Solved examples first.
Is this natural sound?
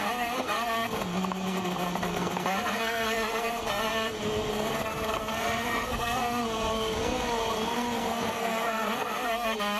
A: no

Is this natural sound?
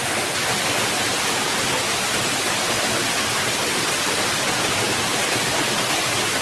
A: yes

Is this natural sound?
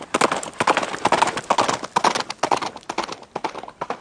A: yes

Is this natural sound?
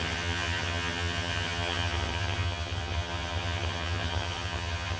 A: no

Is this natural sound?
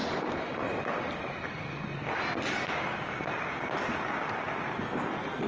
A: yes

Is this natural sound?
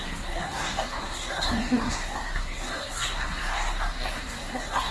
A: no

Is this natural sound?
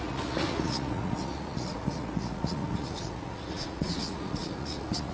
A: no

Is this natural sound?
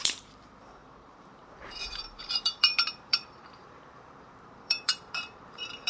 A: no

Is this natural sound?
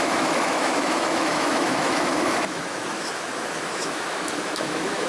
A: no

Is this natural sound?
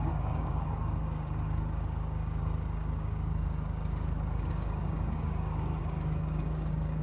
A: no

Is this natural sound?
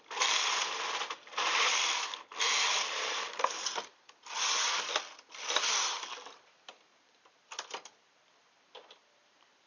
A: no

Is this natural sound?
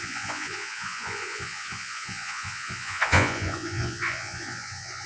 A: no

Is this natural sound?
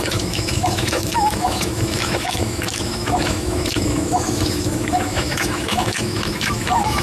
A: no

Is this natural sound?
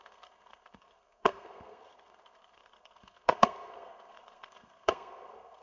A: no